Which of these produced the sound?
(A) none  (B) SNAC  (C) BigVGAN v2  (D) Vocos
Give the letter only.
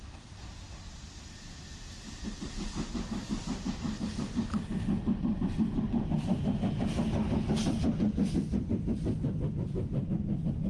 A